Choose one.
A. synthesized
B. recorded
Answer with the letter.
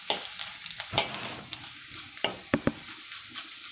B